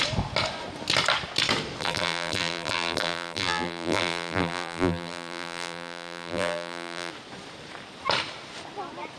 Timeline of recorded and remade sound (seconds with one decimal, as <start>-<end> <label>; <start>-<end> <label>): 0.0-1.8 recorded; 1.8-7.1 remade; 7.1-9.2 recorded